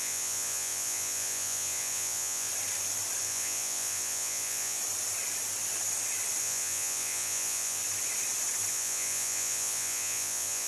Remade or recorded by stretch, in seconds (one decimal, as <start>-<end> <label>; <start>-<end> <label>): 0.0-2.5 remade; 2.5-3.2 recorded; 3.2-4.8 remade; 4.8-6.4 recorded; 6.4-7.8 remade; 7.8-8.7 recorded; 8.7-10.7 remade